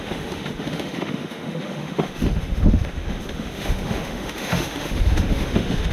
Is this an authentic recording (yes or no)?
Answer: no